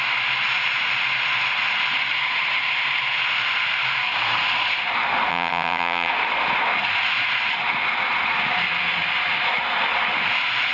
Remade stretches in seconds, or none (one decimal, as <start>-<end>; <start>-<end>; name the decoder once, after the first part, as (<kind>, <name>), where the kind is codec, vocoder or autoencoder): 5.3-6.1 (vocoder, HiFi-GAN)